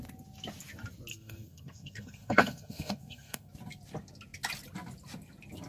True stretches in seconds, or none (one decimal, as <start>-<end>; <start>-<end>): 0.0-1.1; 3.5-5.7